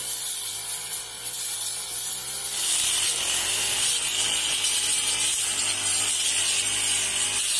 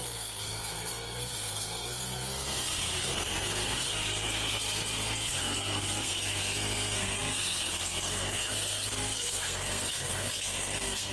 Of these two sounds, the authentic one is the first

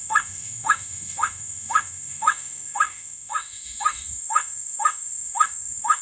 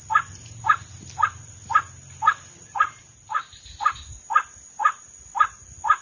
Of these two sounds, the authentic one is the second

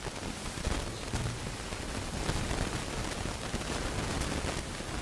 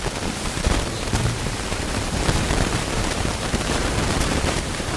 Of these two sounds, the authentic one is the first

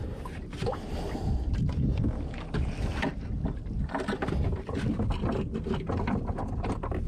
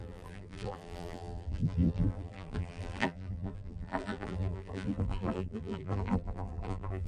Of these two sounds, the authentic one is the first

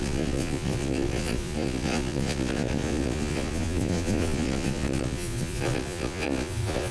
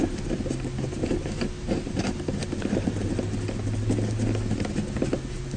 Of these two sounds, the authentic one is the second